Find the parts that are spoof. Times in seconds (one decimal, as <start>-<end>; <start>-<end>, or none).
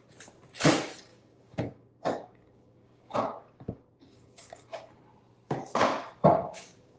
1.1-5.0; 5.7-7.0